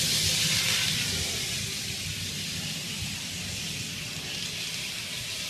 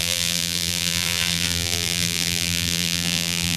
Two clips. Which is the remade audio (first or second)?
second